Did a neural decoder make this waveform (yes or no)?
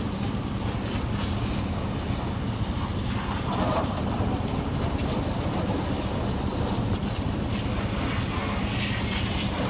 no